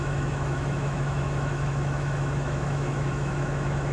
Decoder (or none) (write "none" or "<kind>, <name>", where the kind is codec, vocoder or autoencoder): autoencoder, DAC-VAE